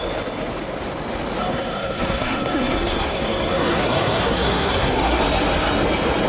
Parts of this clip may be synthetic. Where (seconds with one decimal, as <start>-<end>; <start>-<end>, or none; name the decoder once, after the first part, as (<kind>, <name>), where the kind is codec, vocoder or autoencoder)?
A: 1.4-5.2 (codec, SNAC)